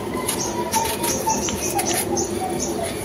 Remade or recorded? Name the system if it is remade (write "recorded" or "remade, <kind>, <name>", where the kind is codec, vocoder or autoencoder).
remade, vocoder, BigVGAN v2